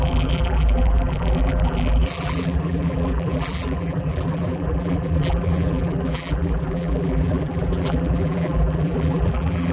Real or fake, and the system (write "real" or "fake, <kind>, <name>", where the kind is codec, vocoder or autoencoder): fake, vocoder, BigVGAN v2